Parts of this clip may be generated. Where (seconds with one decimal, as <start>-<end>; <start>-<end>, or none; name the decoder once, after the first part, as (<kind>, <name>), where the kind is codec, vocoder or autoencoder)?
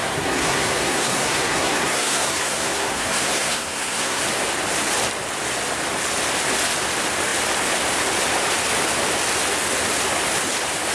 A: 0.0-4.2 (codec, SNAC)